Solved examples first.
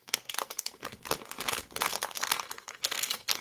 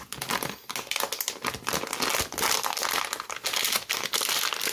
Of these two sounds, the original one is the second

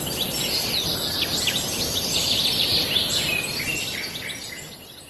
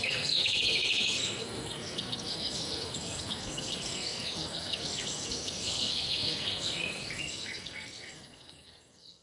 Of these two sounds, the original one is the first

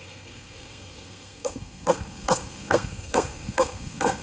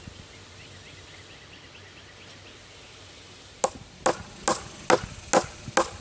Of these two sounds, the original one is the second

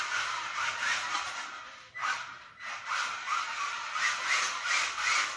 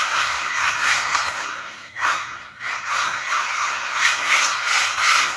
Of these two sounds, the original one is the first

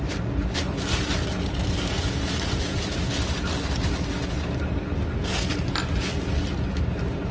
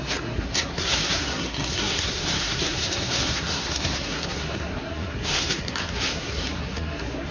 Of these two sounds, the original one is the first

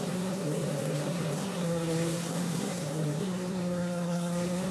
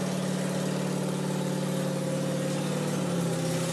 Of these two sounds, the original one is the second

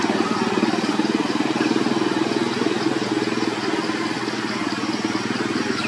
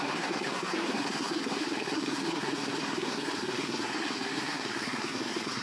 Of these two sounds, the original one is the first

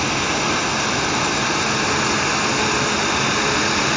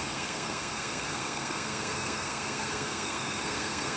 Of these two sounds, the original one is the first